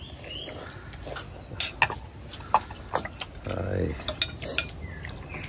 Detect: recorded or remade recorded